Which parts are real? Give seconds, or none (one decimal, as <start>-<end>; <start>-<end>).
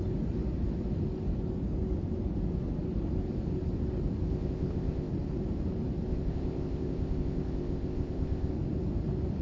0.0-4.3; 5.1-6.1; 8.5-9.4